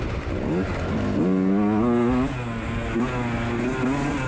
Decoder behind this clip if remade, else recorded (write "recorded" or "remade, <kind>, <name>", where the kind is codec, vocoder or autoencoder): recorded